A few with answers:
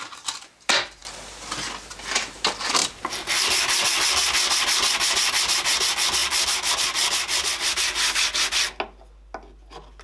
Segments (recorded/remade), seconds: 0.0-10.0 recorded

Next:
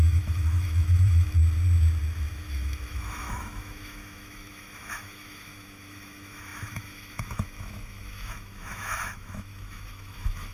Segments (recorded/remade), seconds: 0.0-1.4 remade; 1.4-2.2 recorded; 2.2-10.5 remade

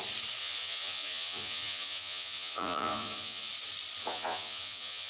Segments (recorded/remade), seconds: 0.0-0.4 recorded; 0.4-3.5 remade; 3.5-4.0 recorded; 4.0-5.1 remade